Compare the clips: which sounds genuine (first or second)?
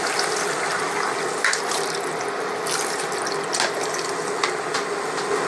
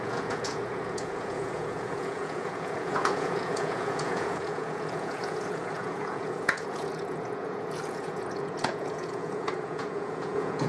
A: first